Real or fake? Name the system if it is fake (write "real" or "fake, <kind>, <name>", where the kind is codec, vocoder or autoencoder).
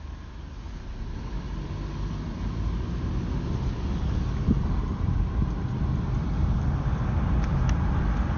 real